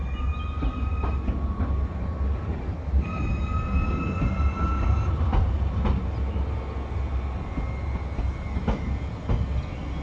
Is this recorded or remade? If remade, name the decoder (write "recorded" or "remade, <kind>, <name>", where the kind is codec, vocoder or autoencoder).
recorded